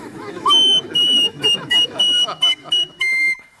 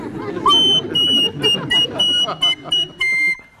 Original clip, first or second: second